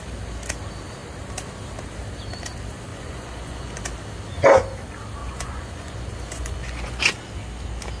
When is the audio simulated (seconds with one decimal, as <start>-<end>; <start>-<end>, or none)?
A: 2.9-3.8; 5.2-7.0